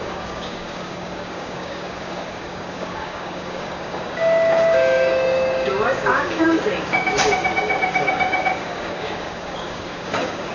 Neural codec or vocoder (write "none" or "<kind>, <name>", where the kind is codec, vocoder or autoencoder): codec, DAC